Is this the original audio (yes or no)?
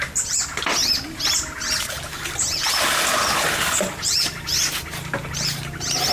yes